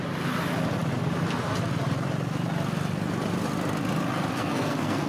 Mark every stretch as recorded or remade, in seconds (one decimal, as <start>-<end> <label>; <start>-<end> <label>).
0.0-4.3 recorded; 4.3-5.1 remade